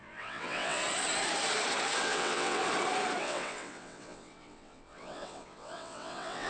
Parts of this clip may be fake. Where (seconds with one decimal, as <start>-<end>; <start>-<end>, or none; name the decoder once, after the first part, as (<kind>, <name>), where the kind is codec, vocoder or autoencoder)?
0.0-0.8 (vocoder, WaveNeXt); 2.0-2.6; 3.2-6.5